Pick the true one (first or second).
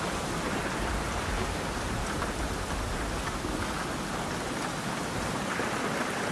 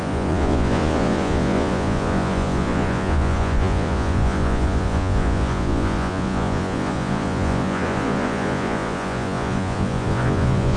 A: first